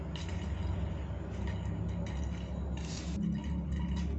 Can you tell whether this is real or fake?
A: real